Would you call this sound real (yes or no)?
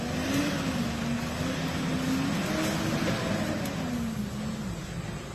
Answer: yes